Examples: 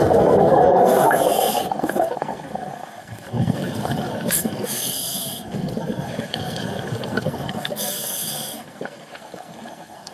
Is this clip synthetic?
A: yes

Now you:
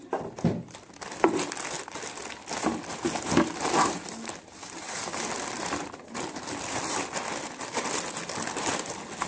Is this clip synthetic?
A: no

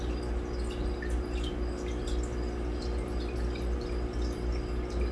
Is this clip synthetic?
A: no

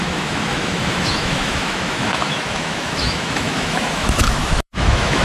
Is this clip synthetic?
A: yes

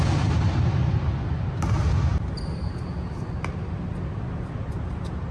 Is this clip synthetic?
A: no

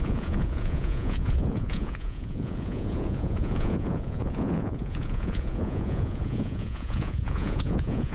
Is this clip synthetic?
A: yes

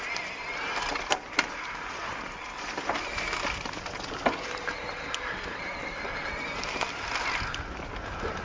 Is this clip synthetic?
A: no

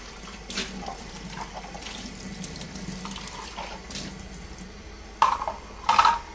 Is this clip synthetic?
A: yes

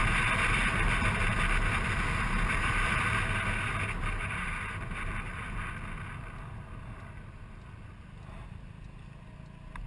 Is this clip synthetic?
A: no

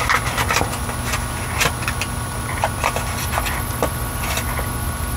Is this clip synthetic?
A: no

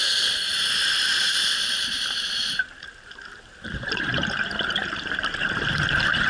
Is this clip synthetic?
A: yes